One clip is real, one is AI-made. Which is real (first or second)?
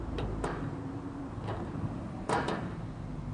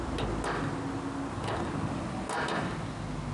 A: second